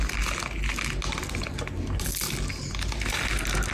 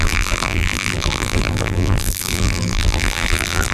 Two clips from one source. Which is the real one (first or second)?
first